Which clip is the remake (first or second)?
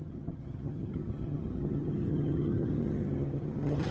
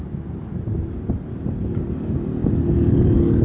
first